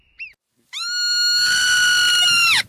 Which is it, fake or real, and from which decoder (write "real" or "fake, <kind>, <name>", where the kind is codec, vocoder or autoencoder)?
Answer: real